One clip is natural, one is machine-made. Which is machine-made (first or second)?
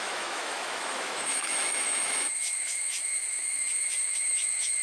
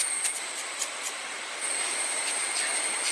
first